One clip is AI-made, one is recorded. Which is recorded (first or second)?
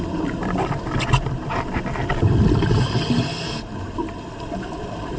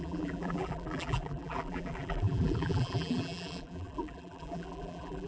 first